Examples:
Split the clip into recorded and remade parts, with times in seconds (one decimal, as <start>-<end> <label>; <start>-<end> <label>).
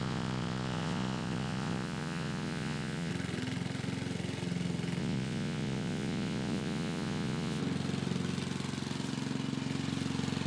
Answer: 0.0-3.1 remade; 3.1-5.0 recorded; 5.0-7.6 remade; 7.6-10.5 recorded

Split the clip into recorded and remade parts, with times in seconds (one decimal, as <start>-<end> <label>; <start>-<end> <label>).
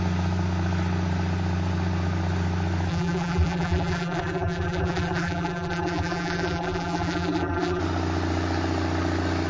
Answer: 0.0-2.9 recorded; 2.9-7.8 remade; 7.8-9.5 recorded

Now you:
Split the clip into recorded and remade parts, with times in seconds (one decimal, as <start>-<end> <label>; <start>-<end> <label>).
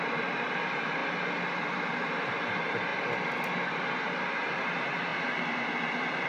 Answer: 0.0-1.0 remade; 1.0-2.5 recorded; 2.5-2.9 remade; 2.9-3.7 recorded; 3.7-6.3 remade